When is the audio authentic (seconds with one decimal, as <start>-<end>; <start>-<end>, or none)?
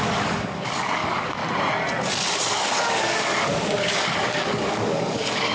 1.4-2.5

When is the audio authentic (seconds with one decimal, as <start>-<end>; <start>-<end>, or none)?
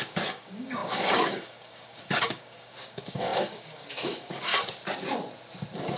4.5-6.0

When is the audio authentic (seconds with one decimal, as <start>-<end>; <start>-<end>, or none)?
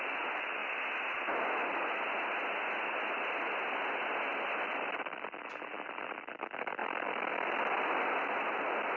0.0-4.3; 5.5-6.8; 8.1-9.0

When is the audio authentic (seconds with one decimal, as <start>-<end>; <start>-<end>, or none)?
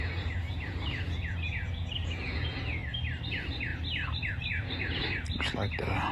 2.8-3.3; 3.7-4.5; 5.0-6.1